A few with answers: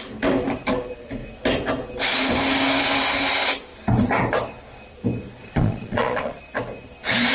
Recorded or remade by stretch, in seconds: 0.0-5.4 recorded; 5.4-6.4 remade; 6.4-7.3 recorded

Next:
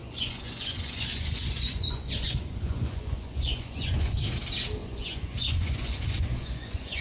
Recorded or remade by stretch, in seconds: 0.0-4.2 remade; 4.2-4.8 recorded; 4.8-7.0 remade

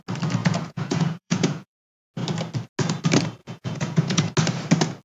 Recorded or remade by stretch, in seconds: 0.0-0.4 recorded; 0.4-1.8 remade; 1.8-3.4 recorded; 3.4-4.3 remade; 4.3-5.0 recorded

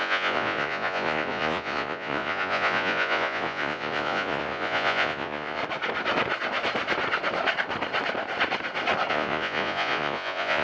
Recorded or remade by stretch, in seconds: 0.0-5.6 remade; 5.6-9.1 recorded; 9.1-10.6 remade

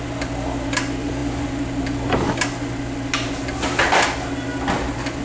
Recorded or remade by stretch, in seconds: 0.0-5.2 recorded

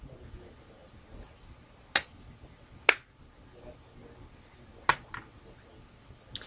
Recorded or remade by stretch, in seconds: 0.0-6.5 recorded